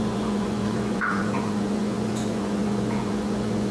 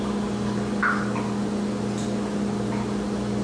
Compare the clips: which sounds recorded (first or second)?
second